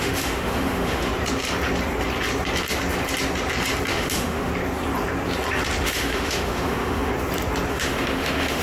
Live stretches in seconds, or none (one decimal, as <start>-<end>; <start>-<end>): 1.1-3.9; 4.5-5.8; 7.1-7.7